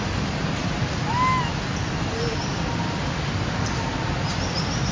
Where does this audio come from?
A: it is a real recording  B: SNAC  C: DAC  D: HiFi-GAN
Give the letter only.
A